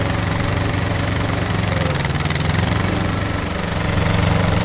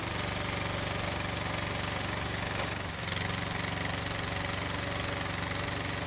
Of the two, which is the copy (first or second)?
first